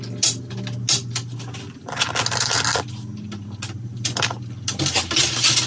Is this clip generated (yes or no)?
no